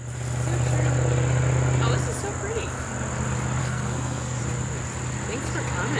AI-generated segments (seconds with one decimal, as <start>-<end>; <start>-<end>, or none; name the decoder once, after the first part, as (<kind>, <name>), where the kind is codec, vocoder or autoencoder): 3.6-4.4 (codec, SNAC)